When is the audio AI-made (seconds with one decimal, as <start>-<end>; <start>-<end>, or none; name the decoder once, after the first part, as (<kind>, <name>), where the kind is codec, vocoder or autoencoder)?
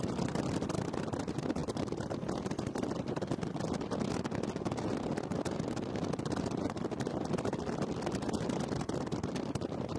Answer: none